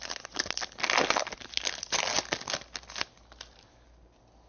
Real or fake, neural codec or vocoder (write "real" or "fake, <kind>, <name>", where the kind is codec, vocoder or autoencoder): real